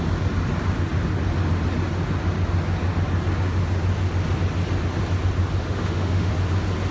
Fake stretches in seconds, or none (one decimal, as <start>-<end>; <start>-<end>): 5.6-6.3